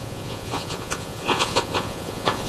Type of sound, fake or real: fake